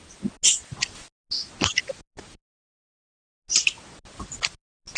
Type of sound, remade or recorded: recorded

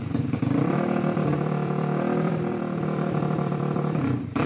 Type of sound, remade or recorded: remade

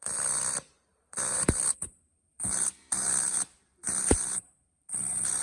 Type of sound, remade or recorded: remade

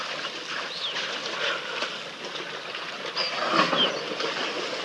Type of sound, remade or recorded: recorded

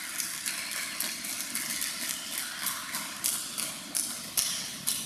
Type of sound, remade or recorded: recorded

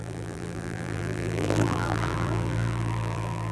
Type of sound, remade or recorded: remade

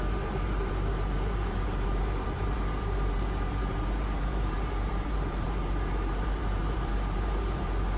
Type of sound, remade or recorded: remade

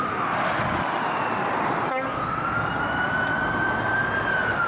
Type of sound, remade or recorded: recorded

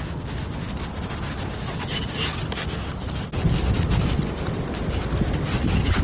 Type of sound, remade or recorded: recorded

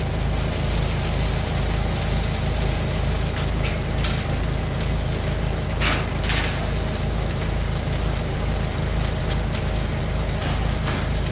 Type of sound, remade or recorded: recorded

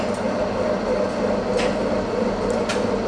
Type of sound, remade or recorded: recorded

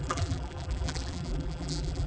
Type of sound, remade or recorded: remade